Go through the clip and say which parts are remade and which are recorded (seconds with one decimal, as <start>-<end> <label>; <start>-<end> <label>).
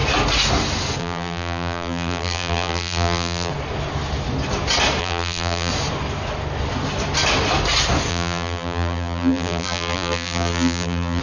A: 0.0-1.0 recorded; 1.0-3.5 remade; 3.5-5.0 recorded; 5.0-5.7 remade; 5.7-8.1 recorded; 8.1-11.2 remade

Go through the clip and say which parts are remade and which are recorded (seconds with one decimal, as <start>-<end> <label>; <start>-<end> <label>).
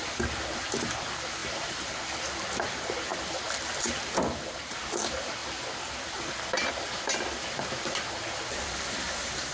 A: 0.0-1.4 recorded; 1.4-1.9 remade; 1.9-9.5 recorded